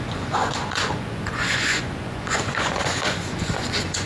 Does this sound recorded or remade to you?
remade